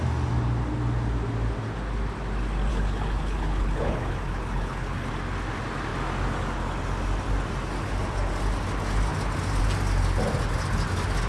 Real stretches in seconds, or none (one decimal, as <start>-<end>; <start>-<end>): 0.0-2.7; 5.1-11.3